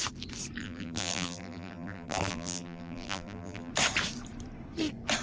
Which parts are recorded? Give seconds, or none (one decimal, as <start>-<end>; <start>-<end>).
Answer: 0.0-0.6; 3.7-5.2